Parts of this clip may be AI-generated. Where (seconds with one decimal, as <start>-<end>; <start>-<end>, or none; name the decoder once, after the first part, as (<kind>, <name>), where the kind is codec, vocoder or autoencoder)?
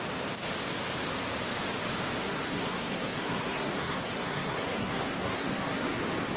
2.2-6.0 (codec, SNAC)